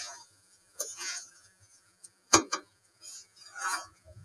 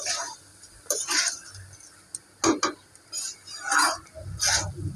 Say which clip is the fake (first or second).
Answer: first